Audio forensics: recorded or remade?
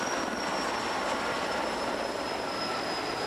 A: recorded